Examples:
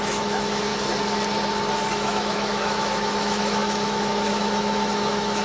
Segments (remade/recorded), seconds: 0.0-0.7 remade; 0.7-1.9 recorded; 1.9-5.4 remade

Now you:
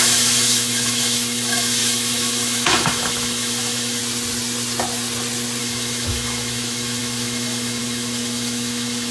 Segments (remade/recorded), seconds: 0.0-4.0 remade; 4.0-5.6 recorded; 5.6-9.1 remade